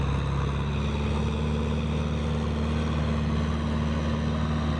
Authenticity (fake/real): real